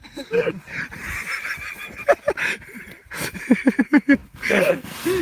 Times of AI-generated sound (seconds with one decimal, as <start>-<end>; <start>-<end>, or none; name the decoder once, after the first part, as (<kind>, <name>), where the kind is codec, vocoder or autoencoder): 0.0-0.7 (codec, SNAC); 3.8-5.2